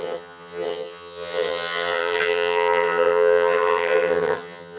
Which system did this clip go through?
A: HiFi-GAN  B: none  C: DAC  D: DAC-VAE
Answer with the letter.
A